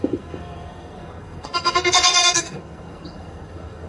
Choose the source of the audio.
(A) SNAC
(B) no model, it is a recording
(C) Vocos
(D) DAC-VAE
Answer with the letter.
A